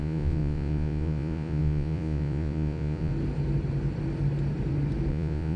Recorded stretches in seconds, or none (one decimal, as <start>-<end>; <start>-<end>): 3.1-5.1